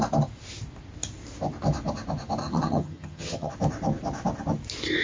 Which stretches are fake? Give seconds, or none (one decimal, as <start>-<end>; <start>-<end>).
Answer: 2.4-3.5